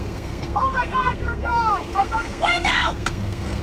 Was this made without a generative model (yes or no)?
no